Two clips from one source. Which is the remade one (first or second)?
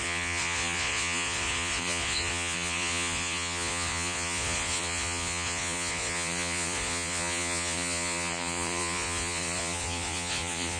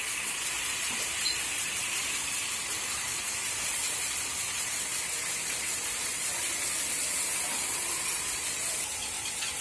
first